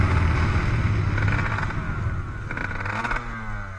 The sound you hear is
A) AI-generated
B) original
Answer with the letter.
B